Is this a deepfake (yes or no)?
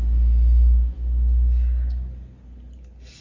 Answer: no